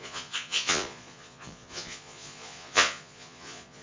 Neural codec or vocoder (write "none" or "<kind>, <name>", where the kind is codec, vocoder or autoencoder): vocoder, Vocos